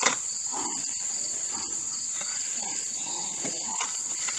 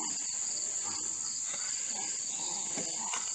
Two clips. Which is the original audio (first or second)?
second